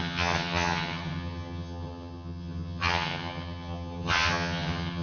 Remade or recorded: remade